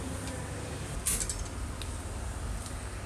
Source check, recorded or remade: recorded